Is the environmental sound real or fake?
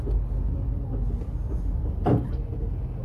real